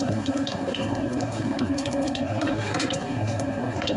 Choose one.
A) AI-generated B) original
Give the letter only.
A